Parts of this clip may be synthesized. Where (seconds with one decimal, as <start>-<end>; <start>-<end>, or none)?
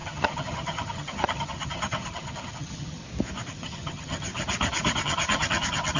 0.0-3.0; 3.5-4.3; 5.0-6.0